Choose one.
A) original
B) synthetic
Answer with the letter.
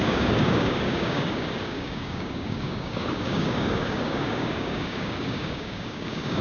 B